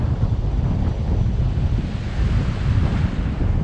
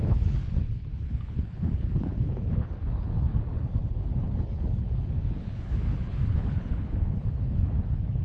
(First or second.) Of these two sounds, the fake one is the second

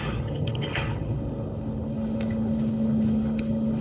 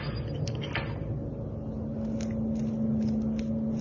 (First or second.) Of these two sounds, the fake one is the first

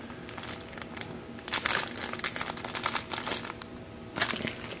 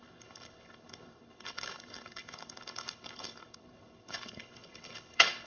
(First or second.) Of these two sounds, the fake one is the second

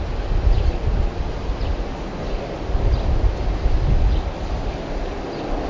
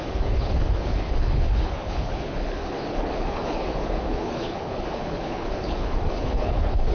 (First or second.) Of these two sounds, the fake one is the second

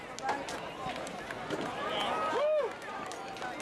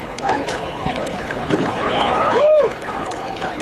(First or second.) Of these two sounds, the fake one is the second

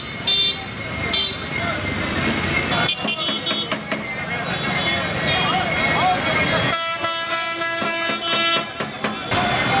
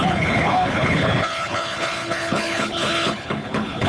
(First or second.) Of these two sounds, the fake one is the second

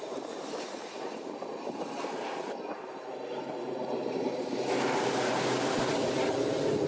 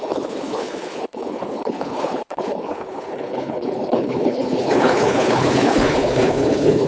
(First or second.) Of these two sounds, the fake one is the second